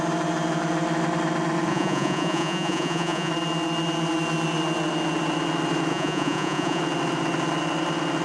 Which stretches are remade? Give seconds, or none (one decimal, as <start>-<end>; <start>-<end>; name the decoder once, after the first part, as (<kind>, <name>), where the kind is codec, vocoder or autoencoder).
1.7-3.3 (vocoder, Vocos); 5.9-6.8